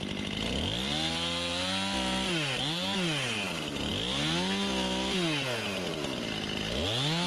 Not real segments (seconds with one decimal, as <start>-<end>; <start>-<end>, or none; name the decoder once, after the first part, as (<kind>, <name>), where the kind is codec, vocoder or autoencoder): none